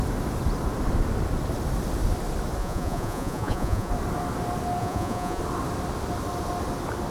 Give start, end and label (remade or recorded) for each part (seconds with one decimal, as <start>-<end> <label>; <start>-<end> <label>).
0.0-2.6 recorded; 2.6-3.9 remade; 3.9-4.8 recorded; 4.8-5.4 remade; 5.4-7.1 recorded